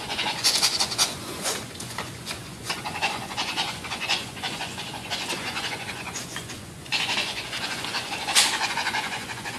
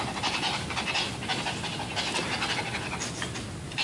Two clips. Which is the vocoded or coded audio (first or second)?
first